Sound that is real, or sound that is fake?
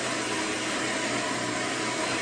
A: real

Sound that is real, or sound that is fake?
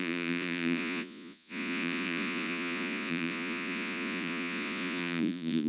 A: fake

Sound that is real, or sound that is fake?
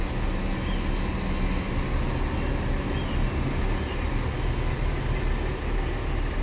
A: real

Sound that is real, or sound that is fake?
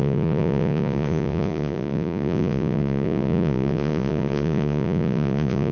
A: fake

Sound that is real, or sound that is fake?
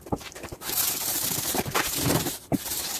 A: fake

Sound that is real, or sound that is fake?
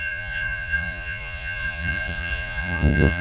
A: fake